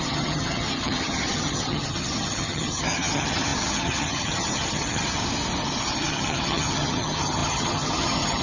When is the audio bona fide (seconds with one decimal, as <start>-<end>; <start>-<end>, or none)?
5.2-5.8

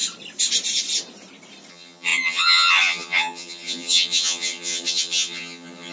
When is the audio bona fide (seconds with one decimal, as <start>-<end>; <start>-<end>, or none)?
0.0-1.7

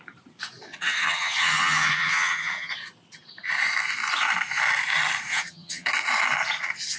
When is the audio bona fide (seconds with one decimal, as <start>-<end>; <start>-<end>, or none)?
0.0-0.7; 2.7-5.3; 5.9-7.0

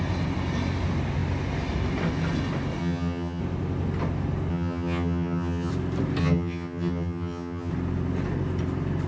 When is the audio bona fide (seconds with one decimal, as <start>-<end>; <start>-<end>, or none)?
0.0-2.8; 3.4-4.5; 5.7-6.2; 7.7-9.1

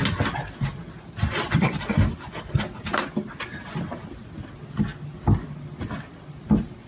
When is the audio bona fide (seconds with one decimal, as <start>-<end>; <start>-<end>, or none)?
0.0-6.9

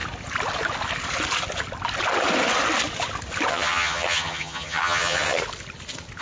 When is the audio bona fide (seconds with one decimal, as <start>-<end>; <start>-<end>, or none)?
0.0-3.5; 5.4-6.2